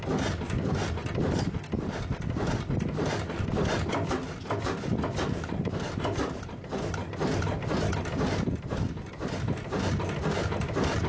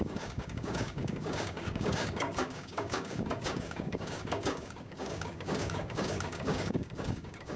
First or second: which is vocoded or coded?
second